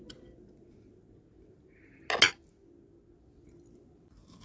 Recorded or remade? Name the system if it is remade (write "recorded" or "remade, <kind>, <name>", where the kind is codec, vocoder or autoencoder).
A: recorded